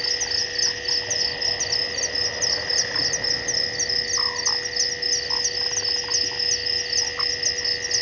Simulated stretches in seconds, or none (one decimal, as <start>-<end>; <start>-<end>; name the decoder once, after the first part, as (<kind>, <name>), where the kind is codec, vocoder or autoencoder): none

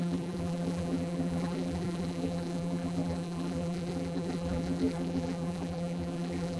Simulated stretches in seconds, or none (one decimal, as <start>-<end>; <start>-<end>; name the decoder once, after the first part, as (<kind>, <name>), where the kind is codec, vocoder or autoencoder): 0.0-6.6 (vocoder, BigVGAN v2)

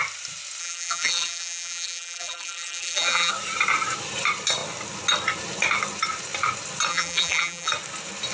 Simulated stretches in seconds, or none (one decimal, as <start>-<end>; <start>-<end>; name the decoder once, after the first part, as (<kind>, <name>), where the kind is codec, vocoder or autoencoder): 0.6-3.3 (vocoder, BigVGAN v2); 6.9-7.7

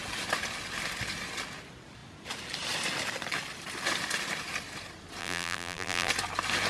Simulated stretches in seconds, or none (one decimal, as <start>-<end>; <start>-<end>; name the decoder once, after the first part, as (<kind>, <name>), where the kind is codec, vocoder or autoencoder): 5.2-6.1 (vocoder, BigVGAN v2)

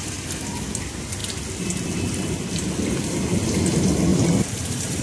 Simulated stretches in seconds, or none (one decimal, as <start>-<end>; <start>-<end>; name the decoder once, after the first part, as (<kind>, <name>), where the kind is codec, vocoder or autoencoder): 4.1-5.0 (vocoder, BigVGAN v2)

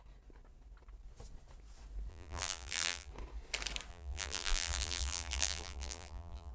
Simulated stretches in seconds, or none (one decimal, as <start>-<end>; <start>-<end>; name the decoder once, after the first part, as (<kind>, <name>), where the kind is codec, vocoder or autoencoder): 2.1-3.1 (vocoder, BigVGAN v2); 3.9-6.5